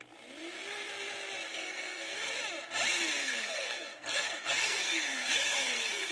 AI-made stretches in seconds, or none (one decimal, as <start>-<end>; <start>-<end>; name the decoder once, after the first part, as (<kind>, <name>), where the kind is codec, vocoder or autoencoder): 1.5-2.3 (codec, SNAC); 3.2-6.1